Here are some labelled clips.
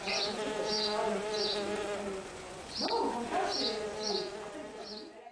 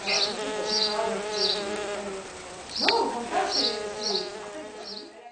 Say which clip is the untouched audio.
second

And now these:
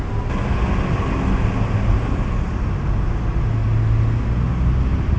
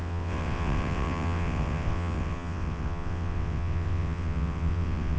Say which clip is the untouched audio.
first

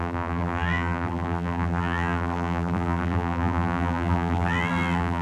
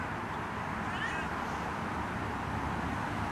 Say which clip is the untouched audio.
second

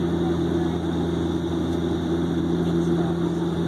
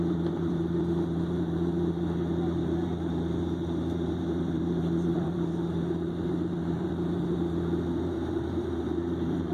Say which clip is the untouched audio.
first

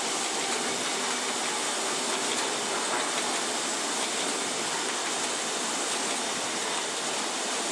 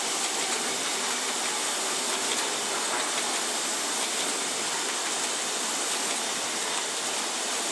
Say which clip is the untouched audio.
first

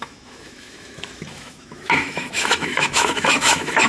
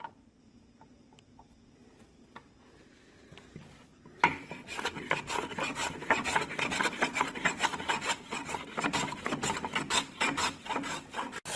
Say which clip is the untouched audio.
second